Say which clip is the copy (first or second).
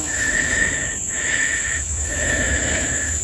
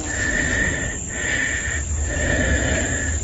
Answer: first